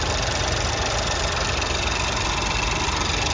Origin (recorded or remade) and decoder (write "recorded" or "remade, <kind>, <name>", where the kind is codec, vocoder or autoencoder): recorded